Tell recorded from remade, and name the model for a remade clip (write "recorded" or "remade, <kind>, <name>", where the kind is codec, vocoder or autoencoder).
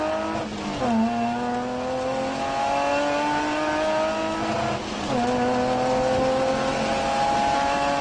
recorded